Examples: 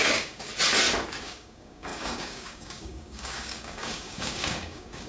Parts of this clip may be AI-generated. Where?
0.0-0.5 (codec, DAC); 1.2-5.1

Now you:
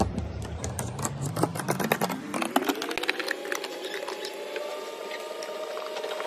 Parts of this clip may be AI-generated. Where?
none

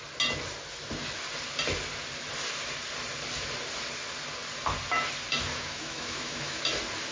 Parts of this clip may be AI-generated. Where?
5.5-6.6 (autoencoder, DAC-VAE)

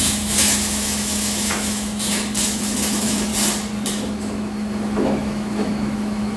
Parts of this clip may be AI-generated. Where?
0.0-3.3 (autoencoder, DAC-VAE); 3.9-6.4